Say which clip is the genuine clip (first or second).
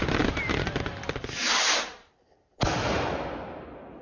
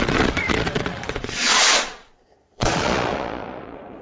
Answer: first